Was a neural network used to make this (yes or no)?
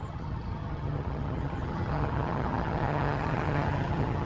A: yes